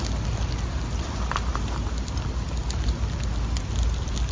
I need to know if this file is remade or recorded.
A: recorded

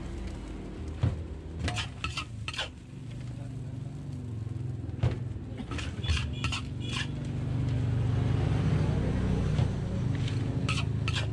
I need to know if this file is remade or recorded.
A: recorded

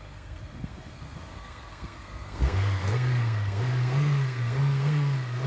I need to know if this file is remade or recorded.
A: remade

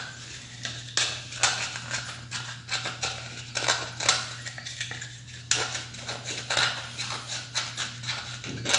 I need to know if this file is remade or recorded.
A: recorded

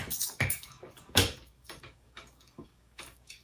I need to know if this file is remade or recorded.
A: remade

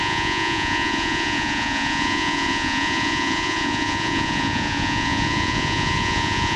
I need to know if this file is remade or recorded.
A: remade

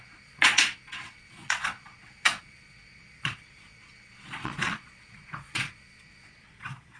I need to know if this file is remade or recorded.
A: remade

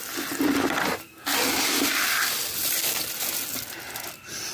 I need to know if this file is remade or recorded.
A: recorded